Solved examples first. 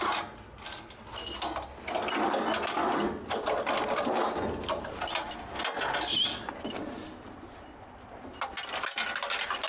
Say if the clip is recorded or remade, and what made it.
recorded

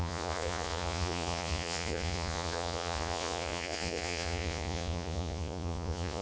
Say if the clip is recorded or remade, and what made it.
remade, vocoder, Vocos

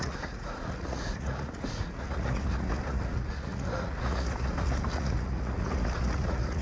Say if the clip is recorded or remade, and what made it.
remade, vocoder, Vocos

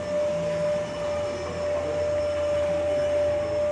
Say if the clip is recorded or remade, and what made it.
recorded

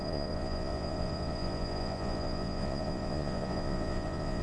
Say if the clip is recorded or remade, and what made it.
remade, vocoder, Vocos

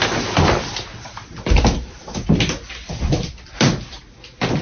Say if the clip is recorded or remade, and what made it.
recorded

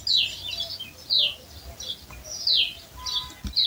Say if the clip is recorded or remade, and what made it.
recorded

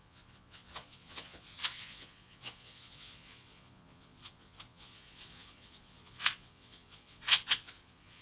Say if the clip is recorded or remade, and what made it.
remade, vocoder, Vocos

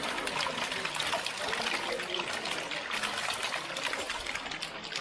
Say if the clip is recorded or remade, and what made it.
recorded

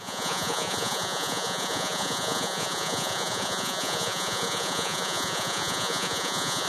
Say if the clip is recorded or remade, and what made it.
remade, vocoder, Vocos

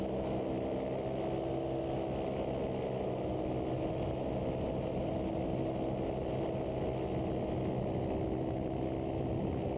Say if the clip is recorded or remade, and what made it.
recorded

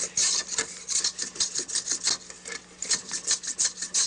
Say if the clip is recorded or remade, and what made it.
recorded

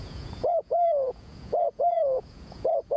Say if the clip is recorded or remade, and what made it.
remade, vocoder, Vocos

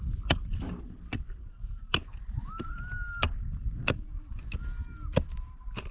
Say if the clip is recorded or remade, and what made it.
recorded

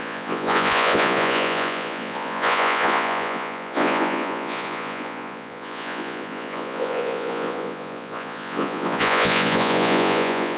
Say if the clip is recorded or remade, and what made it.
remade, vocoder, Vocos